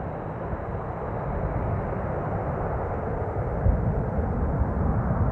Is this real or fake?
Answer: real